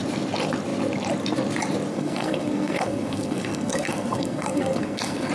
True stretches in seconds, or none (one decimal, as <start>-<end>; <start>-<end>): 0.0-1.9